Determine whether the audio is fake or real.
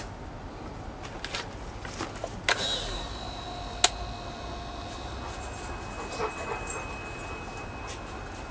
real